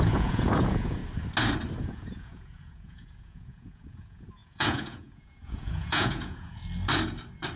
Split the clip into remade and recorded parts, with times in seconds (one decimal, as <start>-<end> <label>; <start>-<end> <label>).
0.0-1.0 remade; 1.0-1.8 recorded; 1.8-6.6 remade; 6.6-7.6 recorded